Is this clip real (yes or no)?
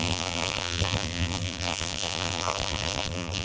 no